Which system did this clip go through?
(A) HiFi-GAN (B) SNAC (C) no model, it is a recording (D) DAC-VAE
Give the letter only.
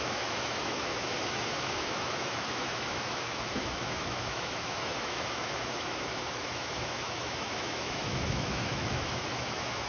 D